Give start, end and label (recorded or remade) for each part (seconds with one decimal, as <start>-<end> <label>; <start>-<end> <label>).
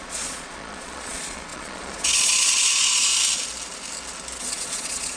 0.0-3.1 remade; 3.1-4.4 recorded; 4.4-5.2 remade